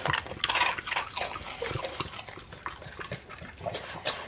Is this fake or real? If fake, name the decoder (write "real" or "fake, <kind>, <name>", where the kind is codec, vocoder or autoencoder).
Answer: real